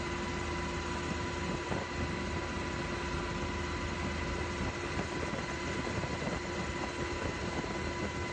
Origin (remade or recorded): recorded